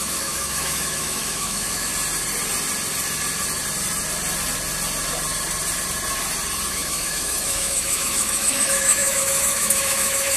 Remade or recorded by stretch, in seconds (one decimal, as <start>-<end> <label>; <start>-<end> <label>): 0.0-1.9 remade; 1.9-6.7 recorded; 6.7-10.4 remade

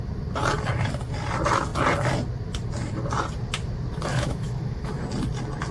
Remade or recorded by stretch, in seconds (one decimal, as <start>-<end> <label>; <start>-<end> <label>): 0.0-4.1 recorded; 4.1-4.9 remade; 4.9-5.7 recorded